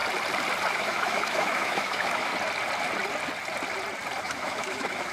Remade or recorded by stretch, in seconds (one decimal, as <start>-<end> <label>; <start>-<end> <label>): 0.0-0.7 recorded; 0.7-2.3 remade; 2.3-4.2 recorded; 4.2-5.1 remade